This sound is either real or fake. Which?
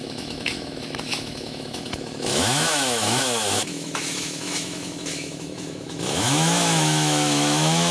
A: fake